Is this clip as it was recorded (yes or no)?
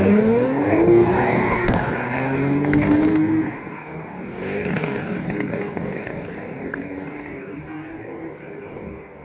no